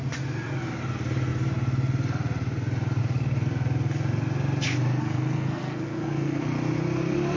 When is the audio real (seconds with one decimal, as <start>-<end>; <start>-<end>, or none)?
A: 0.0-5.0; 6.4-7.4